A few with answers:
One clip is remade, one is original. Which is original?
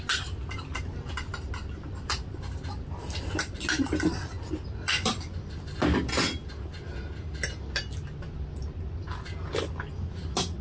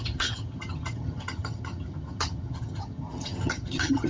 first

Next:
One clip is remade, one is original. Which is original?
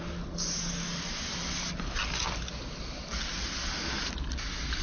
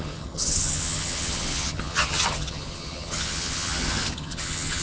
first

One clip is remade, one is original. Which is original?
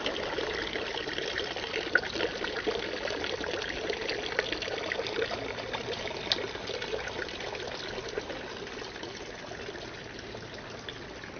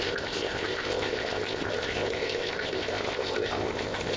first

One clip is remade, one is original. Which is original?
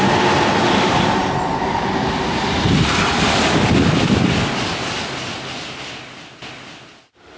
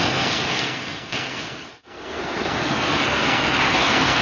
first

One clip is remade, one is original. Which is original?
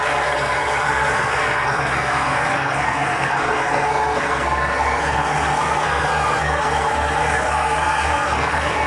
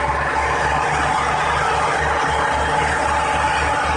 second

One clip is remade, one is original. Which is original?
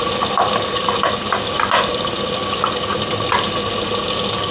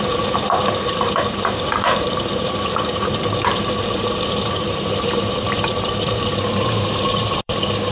first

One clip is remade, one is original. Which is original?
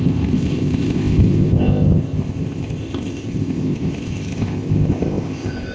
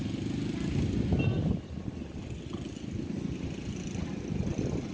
second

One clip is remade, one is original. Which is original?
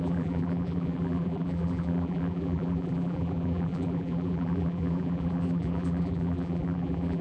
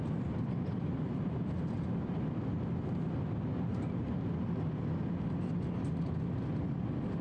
second